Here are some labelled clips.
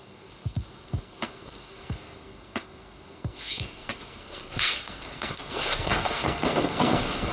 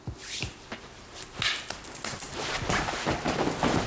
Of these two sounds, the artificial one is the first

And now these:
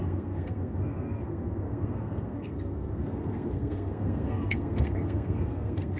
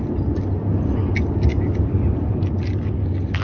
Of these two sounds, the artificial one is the first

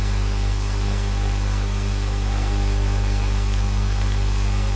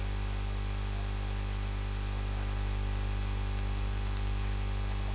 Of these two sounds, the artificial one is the first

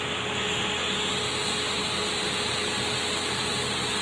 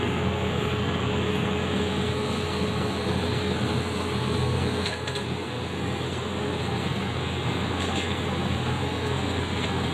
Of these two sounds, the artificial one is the second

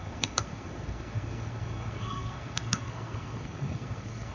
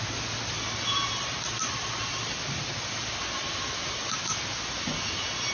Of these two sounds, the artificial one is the first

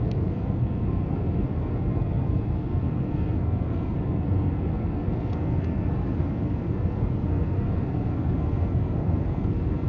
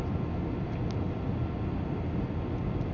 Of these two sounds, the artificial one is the first